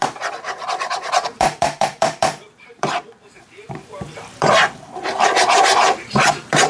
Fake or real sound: fake